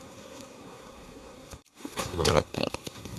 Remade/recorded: remade